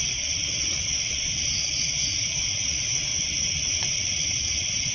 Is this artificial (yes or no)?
yes